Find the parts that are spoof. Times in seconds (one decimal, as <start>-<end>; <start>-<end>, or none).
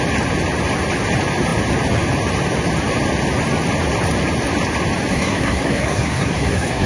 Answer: 5.1-6.9